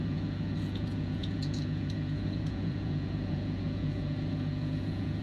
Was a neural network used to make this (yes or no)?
yes